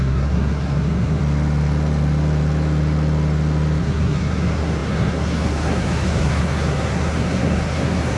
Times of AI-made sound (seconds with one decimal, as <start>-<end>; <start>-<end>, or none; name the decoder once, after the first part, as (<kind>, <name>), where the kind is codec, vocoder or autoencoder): 0.0-1.2 (codec, SNAC); 3.8-8.2